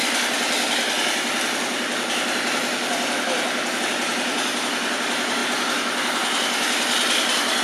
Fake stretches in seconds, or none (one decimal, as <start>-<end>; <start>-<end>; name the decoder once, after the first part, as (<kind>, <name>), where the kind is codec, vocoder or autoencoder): 3.8-5.4 (vocoder, BigVGAN v2)